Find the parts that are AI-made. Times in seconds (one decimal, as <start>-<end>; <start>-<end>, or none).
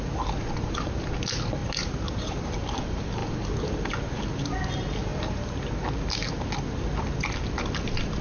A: 1.6-2.6; 5.1-5.7